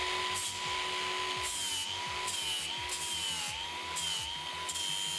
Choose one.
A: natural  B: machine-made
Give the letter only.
A